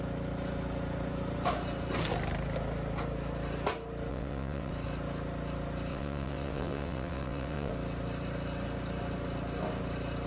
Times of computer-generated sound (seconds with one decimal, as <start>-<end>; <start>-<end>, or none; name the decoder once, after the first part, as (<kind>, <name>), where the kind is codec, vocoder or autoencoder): 4.1-4.7 (vocoder, WaveNeXt); 5.9-7.7